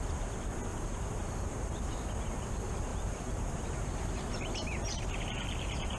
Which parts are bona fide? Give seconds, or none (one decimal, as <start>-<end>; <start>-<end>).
0.0-0.7; 1.9-2.9